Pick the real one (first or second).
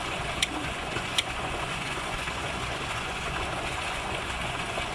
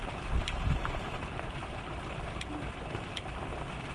second